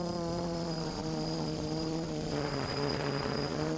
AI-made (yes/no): yes